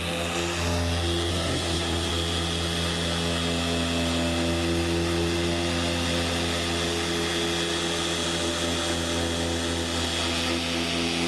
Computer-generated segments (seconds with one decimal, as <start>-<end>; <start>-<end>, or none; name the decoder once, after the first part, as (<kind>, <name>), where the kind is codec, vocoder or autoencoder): 1.3-2.1 (codec, SNAC)